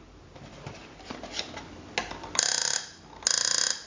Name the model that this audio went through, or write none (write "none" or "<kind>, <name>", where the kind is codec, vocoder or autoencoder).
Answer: none